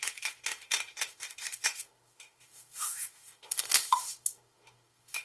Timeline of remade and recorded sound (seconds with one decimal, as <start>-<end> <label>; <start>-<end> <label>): 0.0-5.2 remade